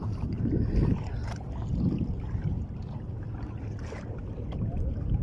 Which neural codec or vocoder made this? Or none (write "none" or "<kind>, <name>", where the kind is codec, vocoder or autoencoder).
none